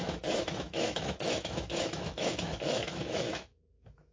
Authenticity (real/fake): fake